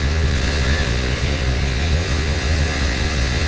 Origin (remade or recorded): remade